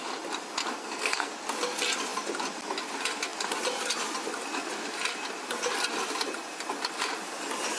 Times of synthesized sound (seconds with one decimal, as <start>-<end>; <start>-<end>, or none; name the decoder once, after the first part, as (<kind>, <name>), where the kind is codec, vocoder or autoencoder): 0.8-1.3 (codec, SNAC)